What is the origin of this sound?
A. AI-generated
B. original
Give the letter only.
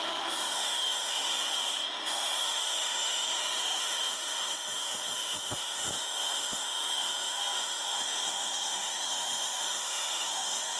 A